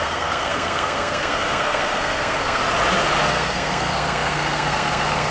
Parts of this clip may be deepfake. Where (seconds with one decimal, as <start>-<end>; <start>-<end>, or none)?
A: 0.0-2.6; 3.3-5.3